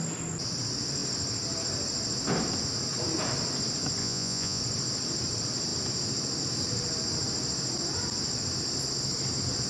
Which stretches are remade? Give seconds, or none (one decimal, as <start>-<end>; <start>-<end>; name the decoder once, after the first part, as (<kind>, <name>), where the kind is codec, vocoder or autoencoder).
4.0-4.6 (vocoder, Vocos)